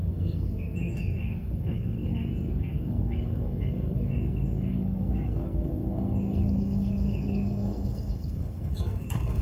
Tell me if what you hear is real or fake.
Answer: fake